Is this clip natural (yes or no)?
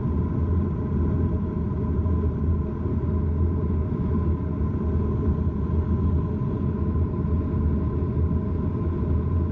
yes